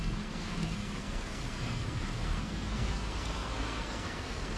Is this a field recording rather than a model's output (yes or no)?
no